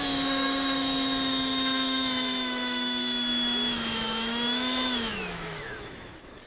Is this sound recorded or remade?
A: remade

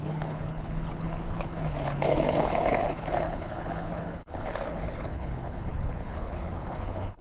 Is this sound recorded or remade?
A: remade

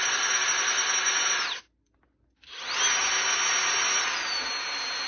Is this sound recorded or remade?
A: recorded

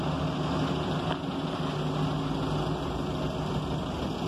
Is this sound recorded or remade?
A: recorded